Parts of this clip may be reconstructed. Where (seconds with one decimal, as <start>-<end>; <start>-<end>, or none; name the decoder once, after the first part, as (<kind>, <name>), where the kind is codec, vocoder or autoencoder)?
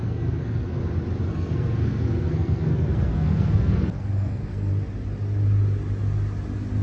0.0-0.8 (codec, SNAC); 1.3-4.7